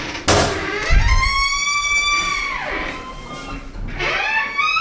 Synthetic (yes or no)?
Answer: no